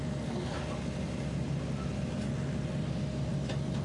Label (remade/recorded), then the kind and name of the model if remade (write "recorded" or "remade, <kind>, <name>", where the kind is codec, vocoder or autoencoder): recorded